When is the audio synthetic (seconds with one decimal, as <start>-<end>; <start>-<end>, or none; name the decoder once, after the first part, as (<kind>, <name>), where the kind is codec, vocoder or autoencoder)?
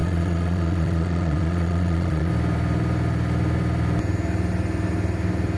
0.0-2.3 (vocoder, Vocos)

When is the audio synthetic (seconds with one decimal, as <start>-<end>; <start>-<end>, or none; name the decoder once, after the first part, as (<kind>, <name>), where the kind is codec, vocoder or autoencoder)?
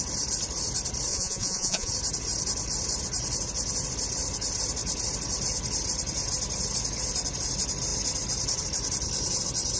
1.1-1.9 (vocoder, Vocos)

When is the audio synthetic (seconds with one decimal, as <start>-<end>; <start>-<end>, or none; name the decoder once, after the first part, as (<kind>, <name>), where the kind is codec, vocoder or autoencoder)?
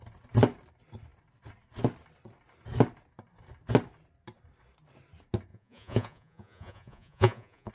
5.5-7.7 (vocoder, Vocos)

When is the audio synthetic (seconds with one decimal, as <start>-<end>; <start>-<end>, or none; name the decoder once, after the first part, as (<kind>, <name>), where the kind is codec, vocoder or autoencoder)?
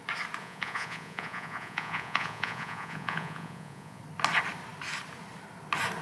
0.4-4.0 (vocoder, Vocos)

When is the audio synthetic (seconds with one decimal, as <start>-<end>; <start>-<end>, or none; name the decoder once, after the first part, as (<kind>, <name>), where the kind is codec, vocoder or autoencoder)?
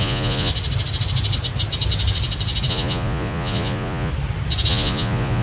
0.0-0.5 (vocoder, Vocos); 2.7-4.1; 4.7-5.4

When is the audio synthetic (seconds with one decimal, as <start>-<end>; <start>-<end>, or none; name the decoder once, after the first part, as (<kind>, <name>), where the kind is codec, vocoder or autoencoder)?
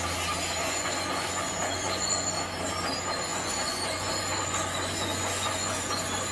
0.6-2.3 (vocoder, Vocos); 3.3-6.3